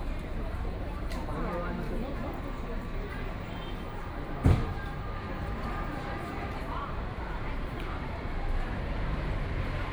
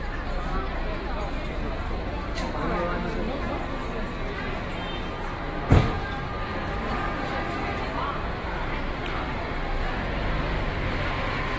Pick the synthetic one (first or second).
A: first